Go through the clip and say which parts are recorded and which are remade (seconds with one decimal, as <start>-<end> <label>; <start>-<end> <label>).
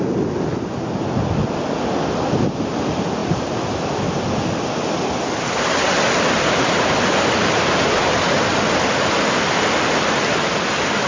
0.0-11.1 recorded